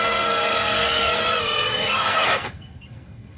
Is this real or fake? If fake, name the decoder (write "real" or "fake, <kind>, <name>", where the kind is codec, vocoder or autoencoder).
fake, codec, SNAC